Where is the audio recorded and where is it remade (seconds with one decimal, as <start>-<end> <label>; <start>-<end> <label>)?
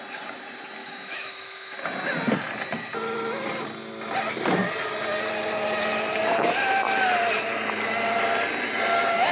0.0-0.8 recorded; 0.8-1.8 remade; 1.8-9.3 recorded